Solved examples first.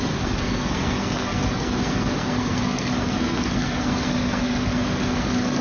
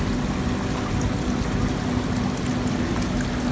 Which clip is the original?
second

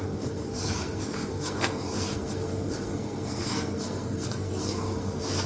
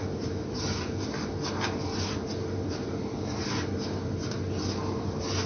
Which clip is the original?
second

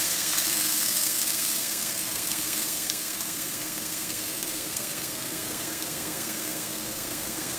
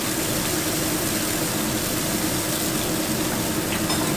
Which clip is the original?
second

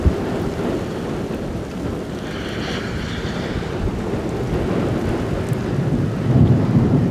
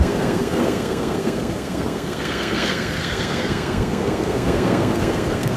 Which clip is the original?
first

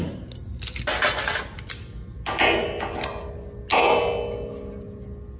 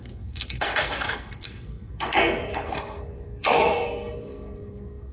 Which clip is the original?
first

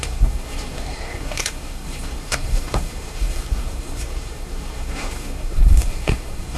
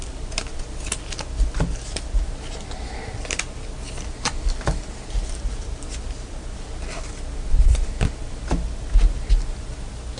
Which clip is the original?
second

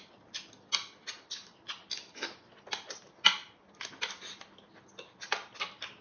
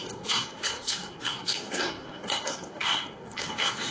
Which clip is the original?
first